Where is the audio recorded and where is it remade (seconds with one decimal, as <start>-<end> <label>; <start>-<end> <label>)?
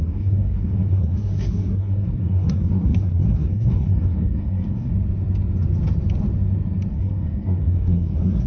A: 0.0-4.9 remade; 4.9-6.9 recorded; 6.9-8.5 remade